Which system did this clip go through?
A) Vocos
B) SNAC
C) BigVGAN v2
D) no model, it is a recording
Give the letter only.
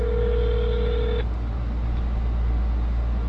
D